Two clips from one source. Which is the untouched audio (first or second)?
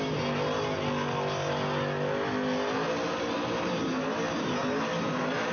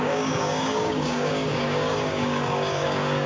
first